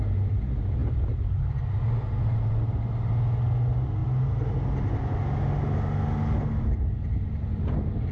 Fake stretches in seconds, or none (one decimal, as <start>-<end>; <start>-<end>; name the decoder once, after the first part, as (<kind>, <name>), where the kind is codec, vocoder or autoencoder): none